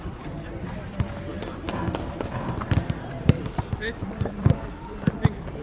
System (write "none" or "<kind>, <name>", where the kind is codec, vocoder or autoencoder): vocoder, BigVGAN v2